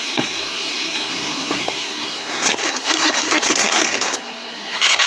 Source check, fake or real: fake